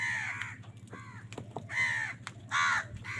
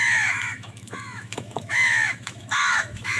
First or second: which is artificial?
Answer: second